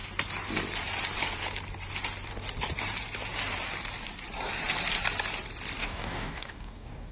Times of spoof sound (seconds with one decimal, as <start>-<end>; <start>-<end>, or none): 5.8-7.1